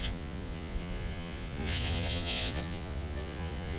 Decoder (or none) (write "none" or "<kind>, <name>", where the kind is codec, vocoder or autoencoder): vocoder, Vocos